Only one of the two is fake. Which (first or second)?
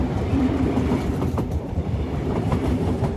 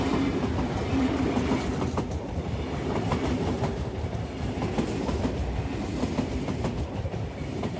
first